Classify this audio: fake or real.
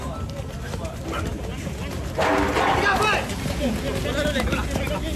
real